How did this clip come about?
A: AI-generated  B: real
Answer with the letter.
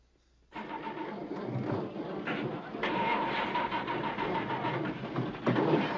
B